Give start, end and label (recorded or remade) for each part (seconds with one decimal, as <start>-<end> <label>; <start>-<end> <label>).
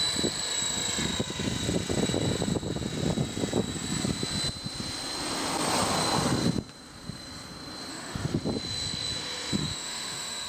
0.0-7.9 recorded; 7.9-8.4 remade; 8.4-9.6 recorded; 9.6-10.5 remade